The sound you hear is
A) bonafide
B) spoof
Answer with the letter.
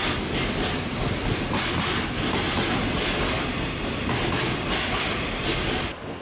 A